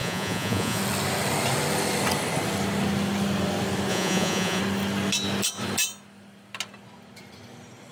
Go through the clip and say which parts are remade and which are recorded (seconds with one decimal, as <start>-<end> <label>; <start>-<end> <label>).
0.0-0.8 remade; 0.8-3.9 recorded; 3.9-4.6 remade; 4.6-7.9 recorded